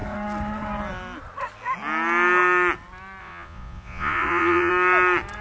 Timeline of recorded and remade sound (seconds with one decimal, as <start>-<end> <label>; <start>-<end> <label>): 0.0-3.2 recorded; 3.2-4.7 remade; 4.7-5.4 recorded